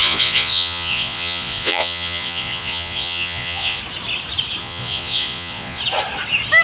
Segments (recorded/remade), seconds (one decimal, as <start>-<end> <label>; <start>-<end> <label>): 0.0-3.8 remade; 3.8-4.6 recorded; 4.6-5.8 remade; 5.8-6.6 recorded